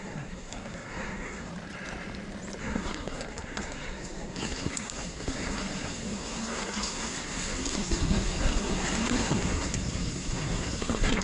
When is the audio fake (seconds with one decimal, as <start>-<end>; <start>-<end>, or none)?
0.0-1.5; 2.6-11.2